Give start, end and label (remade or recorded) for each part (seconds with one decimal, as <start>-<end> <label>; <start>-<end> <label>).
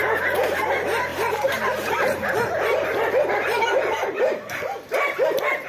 0.0-5.7 recorded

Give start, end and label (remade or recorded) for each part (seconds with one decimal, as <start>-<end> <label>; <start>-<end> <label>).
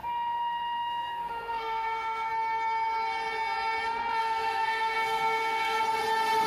0.0-2.3 remade; 2.3-4.2 recorded; 4.2-5.8 remade; 5.8-6.5 recorded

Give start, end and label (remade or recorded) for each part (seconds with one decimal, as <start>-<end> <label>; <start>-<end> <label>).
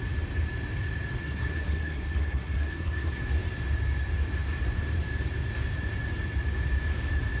0.0-1.2 recorded; 1.2-3.2 remade; 3.2-7.4 recorded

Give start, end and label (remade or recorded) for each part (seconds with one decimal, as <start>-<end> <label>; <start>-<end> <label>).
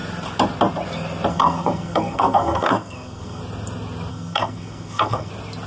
0.0-1.3 recorded; 1.3-3.4 remade; 3.4-4.1 recorded; 4.1-5.3 remade; 5.3-5.7 recorded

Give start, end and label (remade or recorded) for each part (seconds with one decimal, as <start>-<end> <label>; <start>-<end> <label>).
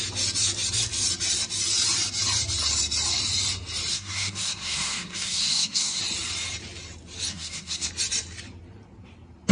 0.0-3.9 recorded; 3.9-6.0 remade; 6.0-7.3 recorded; 7.3-7.9 remade; 7.9-9.5 recorded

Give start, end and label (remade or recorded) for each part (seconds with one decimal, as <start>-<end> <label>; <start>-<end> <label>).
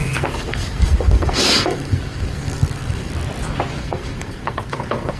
0.0-3.1 remade; 3.1-3.8 recorded; 3.8-5.2 remade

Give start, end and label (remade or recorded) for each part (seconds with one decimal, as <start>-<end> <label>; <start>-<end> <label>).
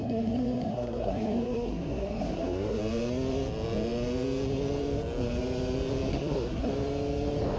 0.0-2.8 remade; 2.8-6.1 recorded; 6.1-6.7 remade; 6.7-7.6 recorded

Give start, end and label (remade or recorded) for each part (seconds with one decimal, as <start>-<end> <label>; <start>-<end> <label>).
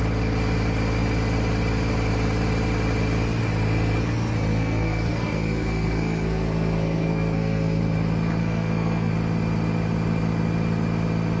0.0-4.5 recorded; 4.5-7.8 remade; 7.8-8.4 recorded; 8.4-9.1 remade; 9.1-11.4 recorded